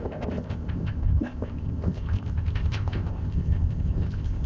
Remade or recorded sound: remade